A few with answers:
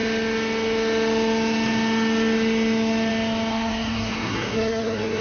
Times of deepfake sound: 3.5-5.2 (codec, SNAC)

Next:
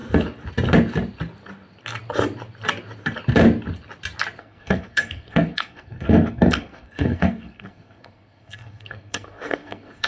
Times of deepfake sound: 4.4-10.1 (codec, SNAC)

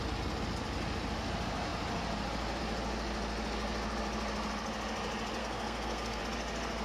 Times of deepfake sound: 5.4-6.2 (codec, SNAC)

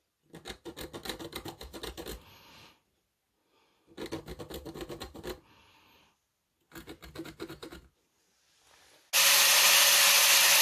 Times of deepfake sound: none